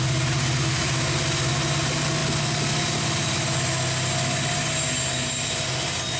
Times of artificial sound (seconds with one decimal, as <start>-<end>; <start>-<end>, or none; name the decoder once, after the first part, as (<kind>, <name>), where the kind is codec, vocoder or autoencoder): none